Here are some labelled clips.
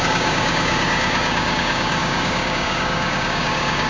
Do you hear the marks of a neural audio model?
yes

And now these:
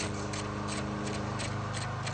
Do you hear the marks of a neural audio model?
no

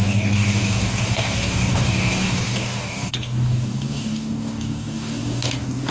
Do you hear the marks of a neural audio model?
yes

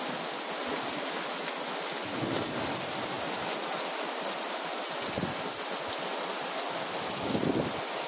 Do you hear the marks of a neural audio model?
no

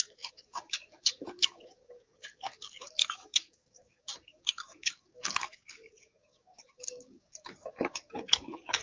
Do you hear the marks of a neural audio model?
yes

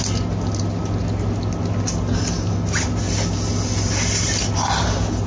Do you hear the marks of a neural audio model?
no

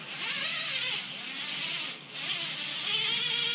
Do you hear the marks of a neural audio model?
no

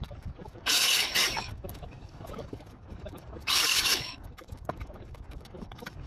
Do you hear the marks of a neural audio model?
yes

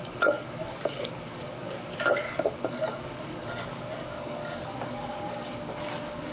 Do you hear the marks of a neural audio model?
yes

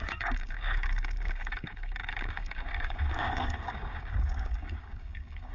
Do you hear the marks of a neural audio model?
yes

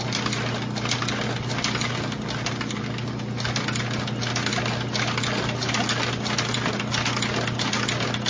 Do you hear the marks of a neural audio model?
no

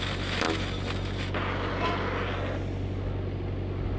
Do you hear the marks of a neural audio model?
no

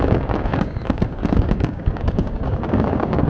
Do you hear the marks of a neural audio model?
yes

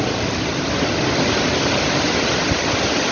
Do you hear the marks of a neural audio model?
no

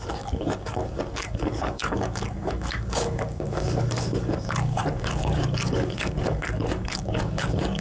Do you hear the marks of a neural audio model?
yes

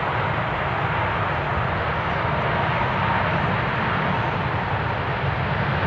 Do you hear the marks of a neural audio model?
no